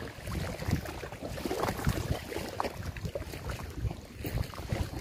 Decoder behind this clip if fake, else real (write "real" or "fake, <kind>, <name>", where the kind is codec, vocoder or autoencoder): real